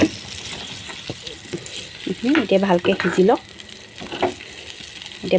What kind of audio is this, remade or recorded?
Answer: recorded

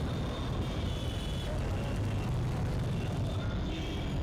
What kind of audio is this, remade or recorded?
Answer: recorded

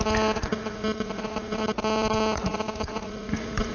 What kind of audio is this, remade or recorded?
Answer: remade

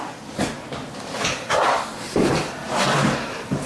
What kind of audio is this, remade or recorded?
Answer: recorded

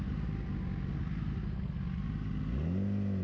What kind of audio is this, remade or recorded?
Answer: recorded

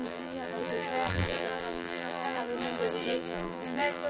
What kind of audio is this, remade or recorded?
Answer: remade